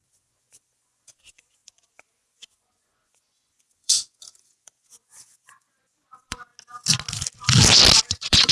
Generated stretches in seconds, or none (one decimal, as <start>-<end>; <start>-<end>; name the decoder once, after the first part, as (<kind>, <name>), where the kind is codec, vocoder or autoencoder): 0.0-6.5 (vocoder, Vocos); 8.0-8.5